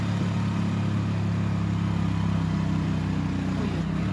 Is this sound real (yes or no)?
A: yes